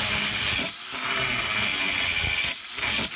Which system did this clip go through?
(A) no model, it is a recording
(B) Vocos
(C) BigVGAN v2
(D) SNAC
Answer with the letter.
A